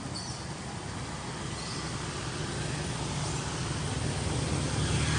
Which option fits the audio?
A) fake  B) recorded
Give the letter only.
B